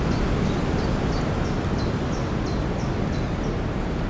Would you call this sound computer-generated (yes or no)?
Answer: no